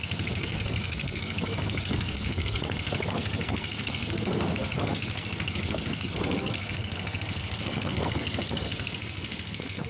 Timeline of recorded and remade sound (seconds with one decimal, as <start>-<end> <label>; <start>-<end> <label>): 0.0-9.9 remade